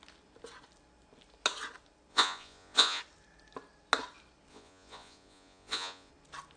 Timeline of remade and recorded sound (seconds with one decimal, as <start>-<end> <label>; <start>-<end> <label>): 0.0-2.1 recorded; 2.1-3.0 remade; 3.0-4.5 recorded; 4.5-6.1 remade; 6.1-6.6 recorded